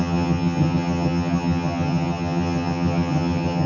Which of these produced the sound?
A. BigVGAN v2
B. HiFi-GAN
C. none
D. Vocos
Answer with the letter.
B